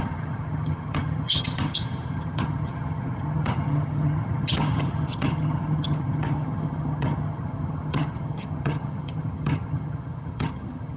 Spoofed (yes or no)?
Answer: yes